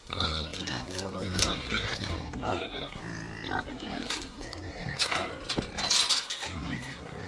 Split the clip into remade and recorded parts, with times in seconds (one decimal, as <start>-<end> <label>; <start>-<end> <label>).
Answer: 0.0-3.0 remade; 3.0-3.7 recorded; 3.7-5.3 remade; 5.3-6.1 recorded; 6.1-7.3 remade